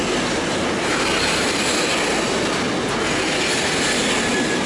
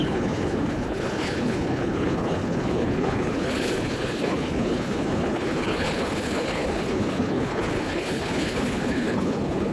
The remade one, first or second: second